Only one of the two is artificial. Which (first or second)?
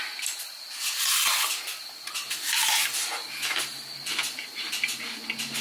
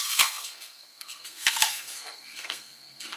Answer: second